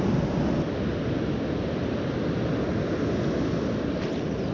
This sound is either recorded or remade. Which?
recorded